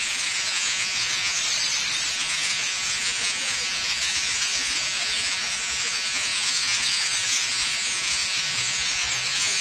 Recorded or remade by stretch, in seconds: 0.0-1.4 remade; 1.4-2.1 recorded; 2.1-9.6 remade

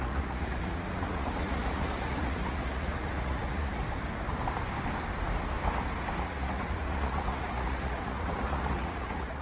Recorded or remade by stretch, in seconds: 0.0-3.8 remade; 3.8-6.2 recorded; 6.2-9.4 remade

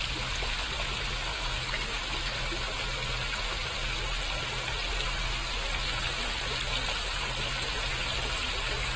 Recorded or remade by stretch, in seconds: 0.0-1.3 recorded; 1.3-2.0 remade; 2.0-9.0 recorded

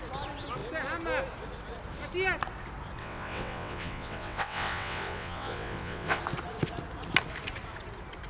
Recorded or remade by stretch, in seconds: 0.0-3.0 recorded; 3.0-6.2 remade; 6.2-8.3 recorded

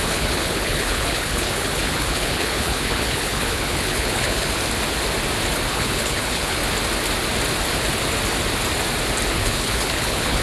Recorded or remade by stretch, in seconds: 0.0-4.6 remade; 4.6-5.7 recorded; 5.7-6.6 remade; 6.6-9.3 recorded; 9.3-10.4 remade